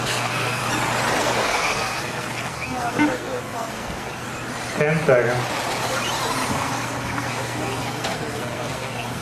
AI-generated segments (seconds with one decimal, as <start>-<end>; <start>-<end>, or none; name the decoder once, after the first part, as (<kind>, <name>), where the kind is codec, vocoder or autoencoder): 0.0-0.6 (codec, SNAC); 1.2-4.3; 6.5-9.2